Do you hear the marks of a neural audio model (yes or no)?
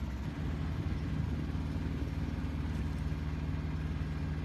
no